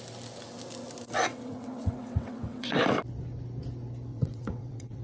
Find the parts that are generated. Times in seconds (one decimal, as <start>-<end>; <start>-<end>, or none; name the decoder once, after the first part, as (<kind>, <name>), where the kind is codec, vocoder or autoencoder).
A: 1.3-2.8 (vocoder, WaveNeXt); 4.1-5.0